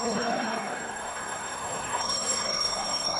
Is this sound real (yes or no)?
no